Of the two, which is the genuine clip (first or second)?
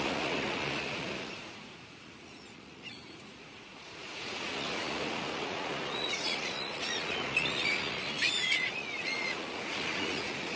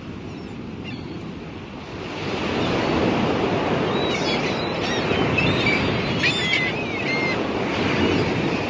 second